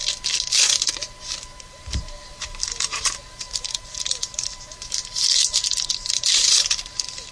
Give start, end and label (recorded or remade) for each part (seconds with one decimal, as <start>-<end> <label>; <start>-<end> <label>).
0.0-1.6 recorded; 1.6-7.3 remade